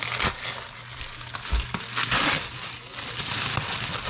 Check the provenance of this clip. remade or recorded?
recorded